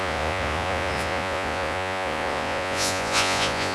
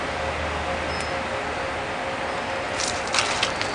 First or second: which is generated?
first